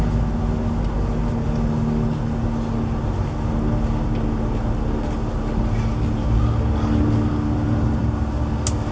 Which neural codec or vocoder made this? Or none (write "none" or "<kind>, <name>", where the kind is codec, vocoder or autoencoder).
none